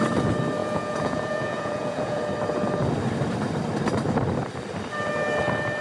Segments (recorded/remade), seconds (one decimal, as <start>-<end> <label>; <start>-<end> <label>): 0.0-0.6 recorded; 0.6-2.3 remade; 2.3-5.8 recorded